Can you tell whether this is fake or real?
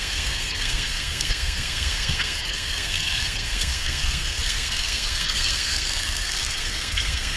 fake